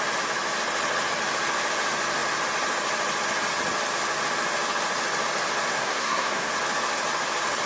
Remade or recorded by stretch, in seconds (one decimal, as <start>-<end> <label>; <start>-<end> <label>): 0.0-5.7 recorded; 5.7-6.5 remade; 6.5-7.7 recorded